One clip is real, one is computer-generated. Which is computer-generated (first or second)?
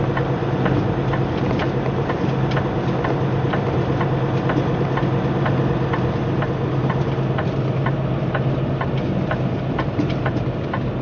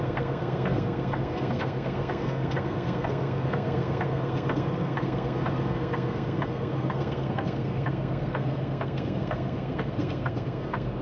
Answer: second